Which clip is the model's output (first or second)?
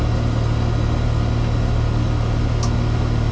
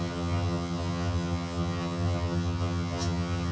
second